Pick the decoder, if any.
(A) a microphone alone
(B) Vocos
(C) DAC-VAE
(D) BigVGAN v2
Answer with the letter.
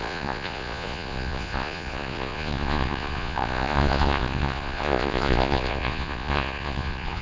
B